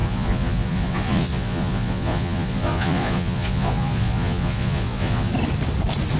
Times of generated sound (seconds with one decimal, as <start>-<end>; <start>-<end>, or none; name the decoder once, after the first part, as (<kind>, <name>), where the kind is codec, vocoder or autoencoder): 0.0-5.3 (vocoder, Vocos)